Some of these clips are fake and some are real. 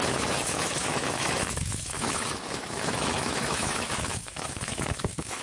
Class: fake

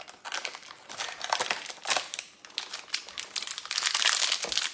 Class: real